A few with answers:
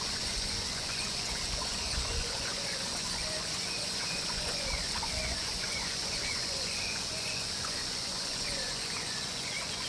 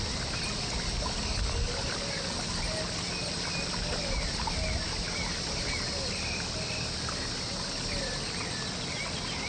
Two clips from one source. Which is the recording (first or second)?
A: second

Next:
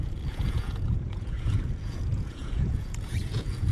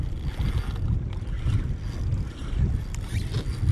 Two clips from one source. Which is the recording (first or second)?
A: second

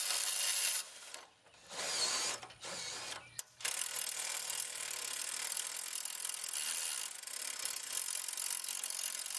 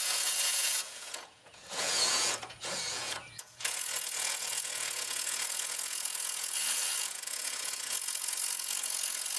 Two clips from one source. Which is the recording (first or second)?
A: first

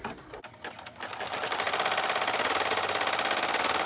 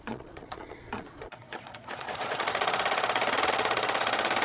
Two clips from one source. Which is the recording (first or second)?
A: first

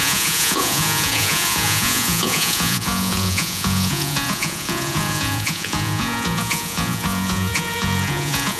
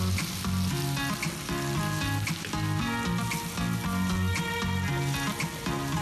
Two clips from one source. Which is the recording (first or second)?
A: second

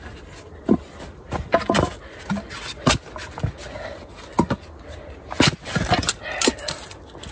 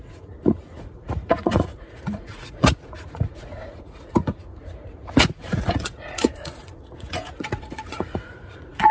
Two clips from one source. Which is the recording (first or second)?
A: first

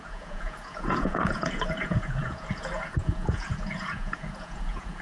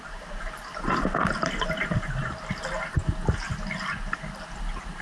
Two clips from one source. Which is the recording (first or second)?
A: second